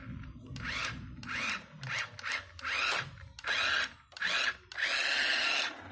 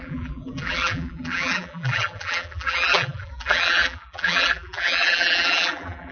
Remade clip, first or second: second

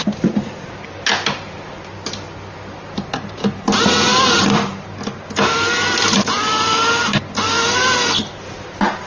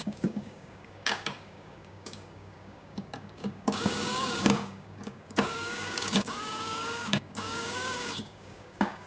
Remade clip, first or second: second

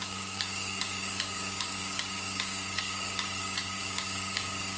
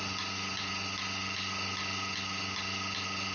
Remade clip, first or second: first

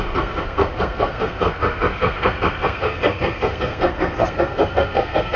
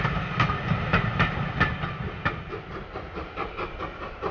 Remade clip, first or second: first